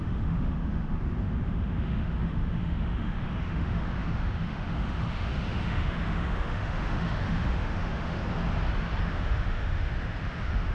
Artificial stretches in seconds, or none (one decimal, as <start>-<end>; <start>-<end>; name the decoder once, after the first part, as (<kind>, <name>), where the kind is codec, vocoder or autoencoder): 0.0-8.2 (autoencoder, DAC-VAE); 9.0-10.7